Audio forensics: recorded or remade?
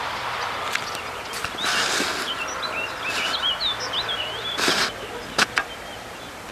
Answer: recorded